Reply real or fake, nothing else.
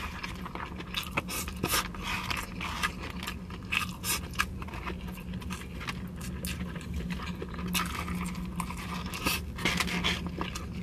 real